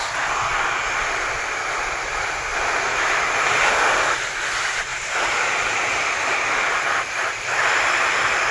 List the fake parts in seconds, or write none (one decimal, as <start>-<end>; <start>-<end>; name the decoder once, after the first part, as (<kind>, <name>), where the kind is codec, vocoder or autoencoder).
2.5-4.4 (vocoder, BigVGAN v2); 4.9-7.3